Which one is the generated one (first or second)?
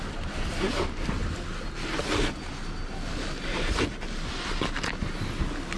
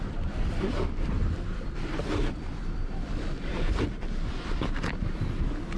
second